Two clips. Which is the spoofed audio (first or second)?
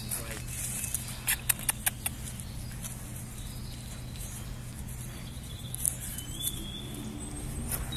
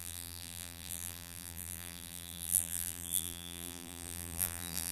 second